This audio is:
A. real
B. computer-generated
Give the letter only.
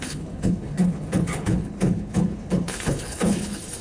B